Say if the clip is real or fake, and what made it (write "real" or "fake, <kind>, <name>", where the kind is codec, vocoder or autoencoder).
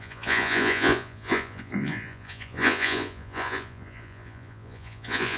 fake, vocoder, Vocos